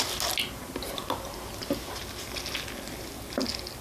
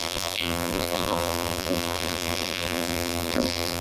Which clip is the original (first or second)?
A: first